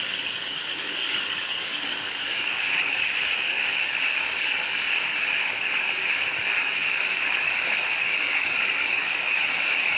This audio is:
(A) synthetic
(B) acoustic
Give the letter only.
A